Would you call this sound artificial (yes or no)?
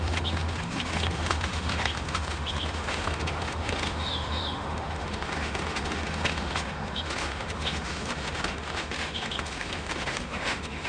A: yes